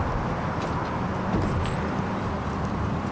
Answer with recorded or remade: recorded